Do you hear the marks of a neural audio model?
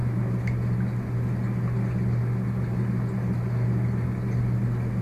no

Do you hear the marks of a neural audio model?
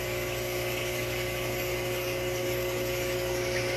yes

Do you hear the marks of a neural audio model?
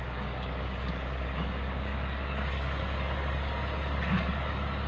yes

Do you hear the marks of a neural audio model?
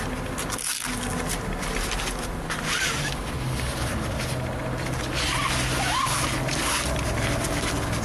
no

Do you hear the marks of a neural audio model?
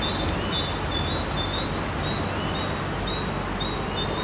no